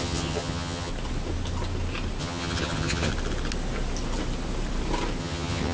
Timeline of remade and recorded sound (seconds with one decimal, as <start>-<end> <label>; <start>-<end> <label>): 0.0-0.9 remade; 0.9-2.2 recorded; 2.2-3.1 remade; 3.1-5.2 recorded; 5.2-5.7 remade